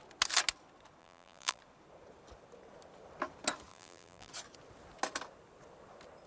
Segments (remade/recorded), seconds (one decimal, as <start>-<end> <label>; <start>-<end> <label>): 0.0-1.0 recorded; 1.0-1.6 remade; 1.6-3.7 recorded; 3.7-4.3 remade; 4.3-6.3 recorded